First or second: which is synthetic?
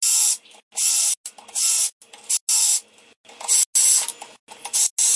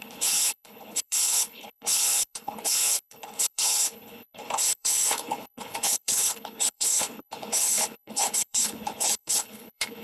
second